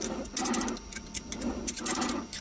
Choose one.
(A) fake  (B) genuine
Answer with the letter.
B